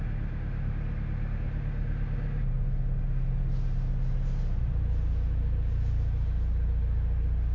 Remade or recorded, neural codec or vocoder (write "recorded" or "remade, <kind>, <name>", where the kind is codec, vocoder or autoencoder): recorded